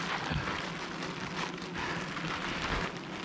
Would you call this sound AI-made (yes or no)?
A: no